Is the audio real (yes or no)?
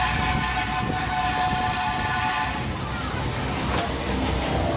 yes